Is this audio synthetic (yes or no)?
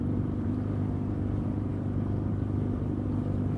no